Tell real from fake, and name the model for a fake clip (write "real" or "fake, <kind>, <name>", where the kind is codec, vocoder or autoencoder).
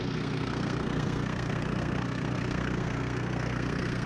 fake, codec, SNAC